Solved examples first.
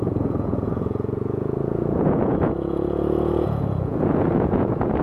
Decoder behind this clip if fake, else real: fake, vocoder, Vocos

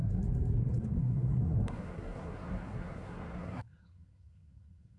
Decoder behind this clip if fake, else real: fake, codec, SNAC